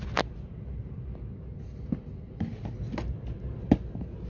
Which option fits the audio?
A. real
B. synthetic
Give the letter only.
A